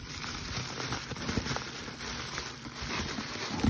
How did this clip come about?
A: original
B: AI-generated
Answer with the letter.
B